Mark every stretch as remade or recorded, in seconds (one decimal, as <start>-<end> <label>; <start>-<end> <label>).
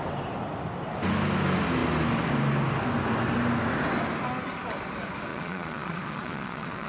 0.0-5.3 recorded; 5.3-6.9 remade